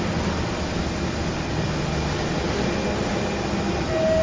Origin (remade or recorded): recorded